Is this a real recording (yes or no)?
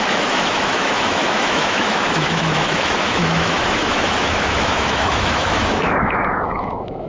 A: no